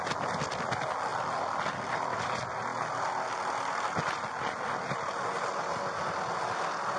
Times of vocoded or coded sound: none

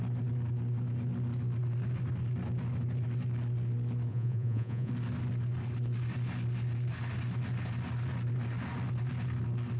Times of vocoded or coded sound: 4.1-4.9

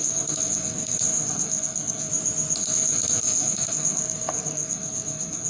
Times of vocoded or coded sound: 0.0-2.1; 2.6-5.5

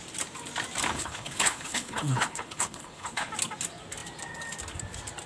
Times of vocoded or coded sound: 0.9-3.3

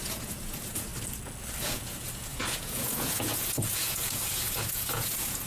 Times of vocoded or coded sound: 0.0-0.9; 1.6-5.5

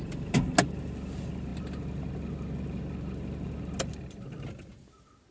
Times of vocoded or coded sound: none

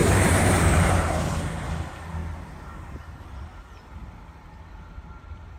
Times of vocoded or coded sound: 0.0-1.0; 2.2-3.2

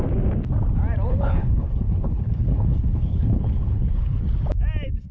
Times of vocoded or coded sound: 1.1-4.2